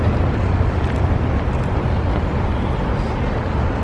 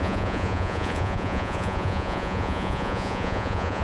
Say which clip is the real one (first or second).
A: first